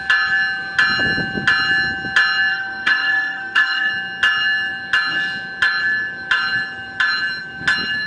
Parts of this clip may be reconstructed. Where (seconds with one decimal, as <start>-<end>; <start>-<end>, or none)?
2.5-3.9